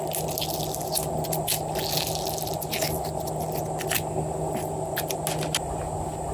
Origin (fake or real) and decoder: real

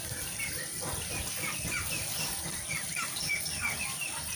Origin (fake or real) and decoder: fake, vocoder, BigVGAN v2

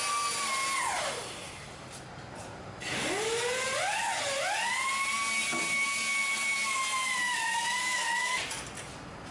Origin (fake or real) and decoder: real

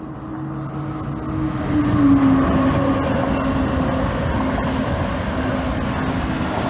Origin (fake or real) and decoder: real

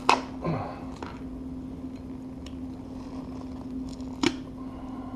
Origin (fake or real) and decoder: real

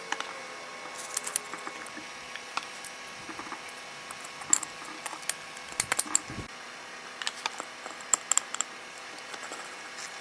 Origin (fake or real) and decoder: real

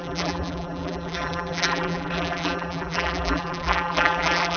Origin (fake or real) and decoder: fake, vocoder, BigVGAN v2